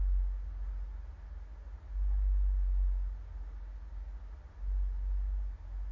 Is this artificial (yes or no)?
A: no